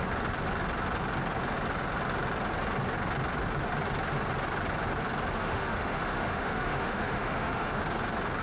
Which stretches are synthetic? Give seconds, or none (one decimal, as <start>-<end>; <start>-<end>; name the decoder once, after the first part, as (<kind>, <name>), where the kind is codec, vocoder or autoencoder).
5.4-7.8 (autoencoder, DAC-VAE)